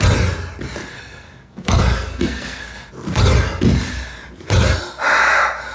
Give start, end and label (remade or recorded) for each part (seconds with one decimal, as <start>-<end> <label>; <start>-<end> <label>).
0.0-0.9 recorded; 0.9-2.9 remade; 2.9-5.7 recorded